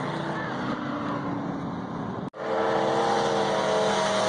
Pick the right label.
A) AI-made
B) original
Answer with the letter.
B